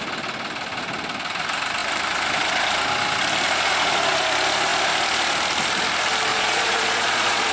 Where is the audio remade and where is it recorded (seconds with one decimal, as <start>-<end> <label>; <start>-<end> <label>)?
0.0-6.3 recorded; 6.3-7.5 remade